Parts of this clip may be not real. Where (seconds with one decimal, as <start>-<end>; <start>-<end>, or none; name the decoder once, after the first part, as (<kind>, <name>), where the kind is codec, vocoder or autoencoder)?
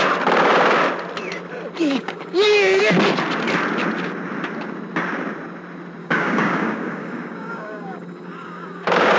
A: 1.8-2.8 (codec, DAC); 6.0-9.2